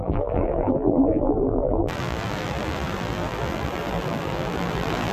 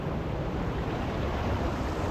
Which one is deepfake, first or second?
first